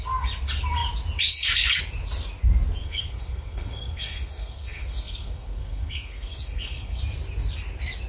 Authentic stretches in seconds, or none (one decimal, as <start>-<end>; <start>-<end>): 0.0-2.8; 7.0-8.1